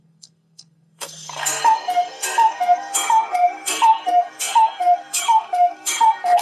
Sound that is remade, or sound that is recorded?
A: remade